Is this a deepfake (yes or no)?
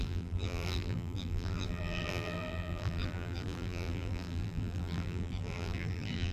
yes